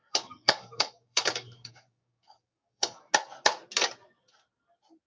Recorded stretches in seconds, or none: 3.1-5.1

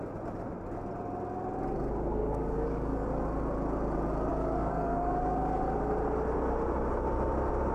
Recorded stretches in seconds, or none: 0.0-2.2; 3.1-4.3; 5.6-7.7

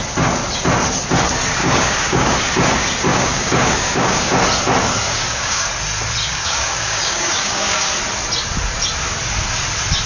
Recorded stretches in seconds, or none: 0.0-1.6; 2.4-3.1; 4.3-5.1; 5.6-6.2; 7.9-10.1

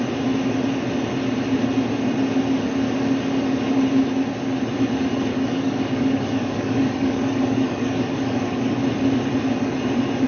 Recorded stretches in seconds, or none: 0.0-5.3; 8.8-10.3